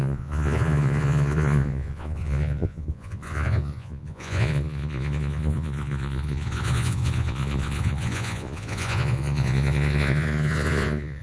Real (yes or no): no